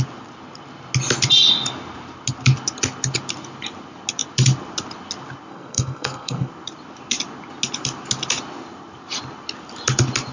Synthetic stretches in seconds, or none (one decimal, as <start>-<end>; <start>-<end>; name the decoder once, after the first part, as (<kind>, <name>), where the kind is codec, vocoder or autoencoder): 5.5-6.5 (codec, SNAC)